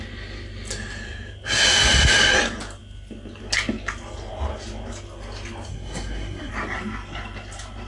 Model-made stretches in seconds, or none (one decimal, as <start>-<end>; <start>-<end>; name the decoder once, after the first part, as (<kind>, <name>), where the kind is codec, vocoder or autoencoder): 5.7-6.5 (codec, SNAC)